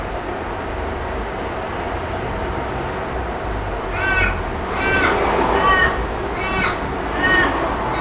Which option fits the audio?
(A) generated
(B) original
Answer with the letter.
B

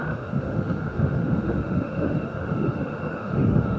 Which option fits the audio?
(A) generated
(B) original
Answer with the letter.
A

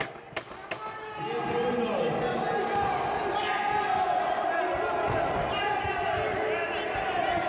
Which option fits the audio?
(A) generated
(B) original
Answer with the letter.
B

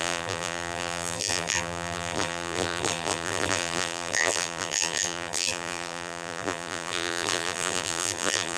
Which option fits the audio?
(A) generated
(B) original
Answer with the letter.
A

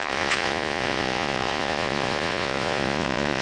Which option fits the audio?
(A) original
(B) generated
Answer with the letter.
B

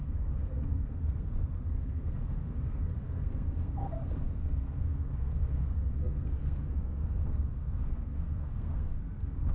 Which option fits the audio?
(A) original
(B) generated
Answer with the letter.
B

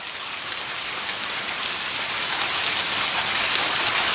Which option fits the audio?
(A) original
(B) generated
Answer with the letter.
A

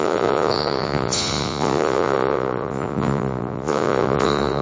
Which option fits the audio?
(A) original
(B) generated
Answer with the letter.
B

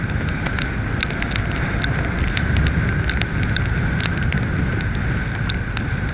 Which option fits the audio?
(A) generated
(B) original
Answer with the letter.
B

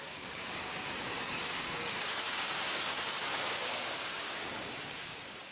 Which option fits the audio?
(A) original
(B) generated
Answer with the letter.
B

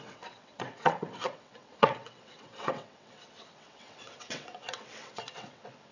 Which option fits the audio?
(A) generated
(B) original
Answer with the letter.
A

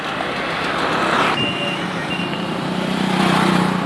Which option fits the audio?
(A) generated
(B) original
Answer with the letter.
A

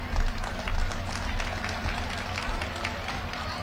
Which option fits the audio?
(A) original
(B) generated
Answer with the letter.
A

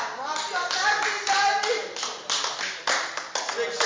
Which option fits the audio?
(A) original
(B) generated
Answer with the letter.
A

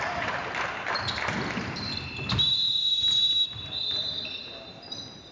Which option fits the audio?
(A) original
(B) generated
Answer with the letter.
B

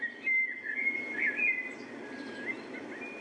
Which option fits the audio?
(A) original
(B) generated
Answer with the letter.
A